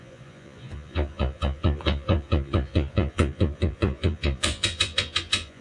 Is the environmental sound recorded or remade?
remade